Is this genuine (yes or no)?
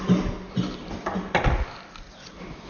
yes